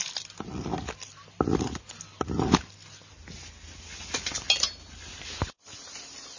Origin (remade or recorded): recorded